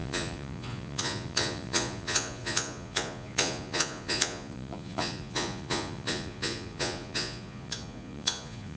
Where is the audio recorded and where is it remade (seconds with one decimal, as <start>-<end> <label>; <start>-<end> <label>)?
0.0-8.8 remade